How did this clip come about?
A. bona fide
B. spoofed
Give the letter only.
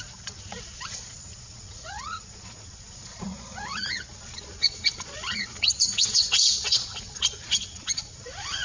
B